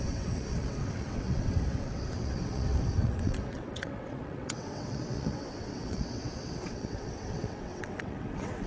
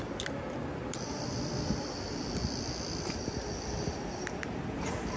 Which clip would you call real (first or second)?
second